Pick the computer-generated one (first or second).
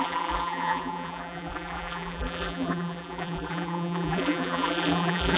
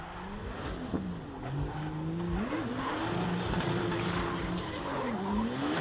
first